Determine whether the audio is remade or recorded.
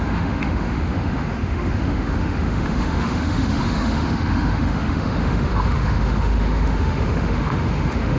remade